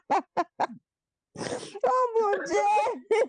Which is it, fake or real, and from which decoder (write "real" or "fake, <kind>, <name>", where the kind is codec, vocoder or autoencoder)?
fake, vocoder, BigVGAN v2